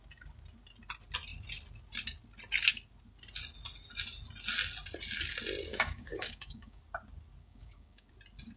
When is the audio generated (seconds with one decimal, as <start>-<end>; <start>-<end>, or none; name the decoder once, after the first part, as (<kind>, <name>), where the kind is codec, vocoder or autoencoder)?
5.7-6.8 (codec, DAC); 7.4-8.1